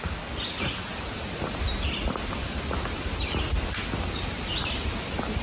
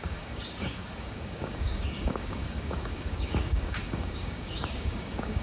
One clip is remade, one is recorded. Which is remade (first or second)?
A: second